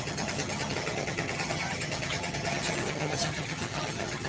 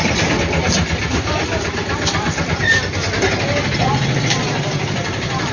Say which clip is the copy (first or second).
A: first